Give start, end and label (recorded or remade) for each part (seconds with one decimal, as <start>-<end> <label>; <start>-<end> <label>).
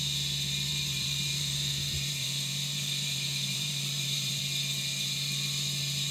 0.0-0.7 recorded; 0.7-4.4 remade; 4.4-6.1 recorded